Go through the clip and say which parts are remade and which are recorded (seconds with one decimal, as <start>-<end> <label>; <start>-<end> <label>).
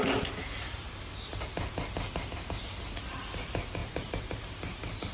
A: 0.0-3.8 recorded; 3.8-4.4 remade; 4.4-5.1 recorded